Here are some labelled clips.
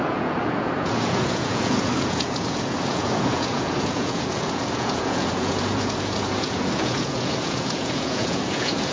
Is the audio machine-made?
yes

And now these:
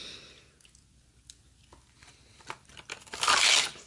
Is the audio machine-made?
no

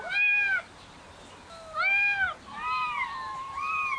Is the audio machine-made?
no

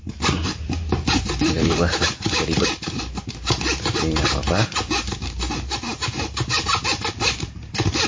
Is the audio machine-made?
yes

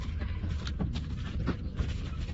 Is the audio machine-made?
no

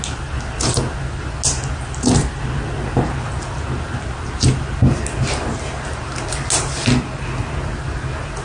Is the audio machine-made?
no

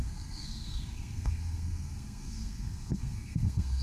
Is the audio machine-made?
yes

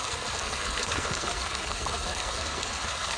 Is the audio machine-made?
yes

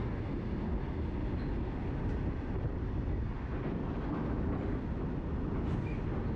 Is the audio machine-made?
no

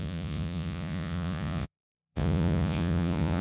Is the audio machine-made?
yes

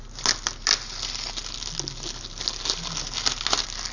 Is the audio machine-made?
no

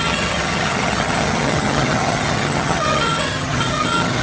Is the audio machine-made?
yes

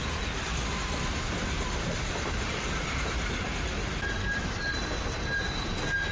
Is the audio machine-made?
no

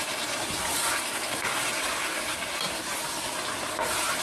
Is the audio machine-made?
yes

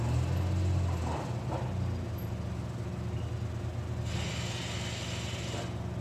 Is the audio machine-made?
no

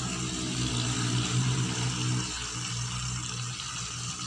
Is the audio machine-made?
no